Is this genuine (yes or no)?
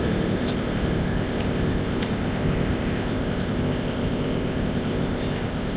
no